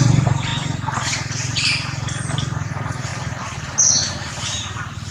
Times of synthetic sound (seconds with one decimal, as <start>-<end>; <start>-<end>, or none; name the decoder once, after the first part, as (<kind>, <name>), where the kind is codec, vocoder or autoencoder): 0.0-0.5 (vocoder, BigVGAN v2); 2.7-3.1; 4.1-5.1